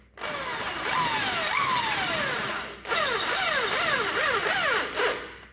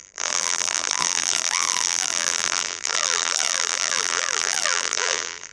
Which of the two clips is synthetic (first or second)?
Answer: second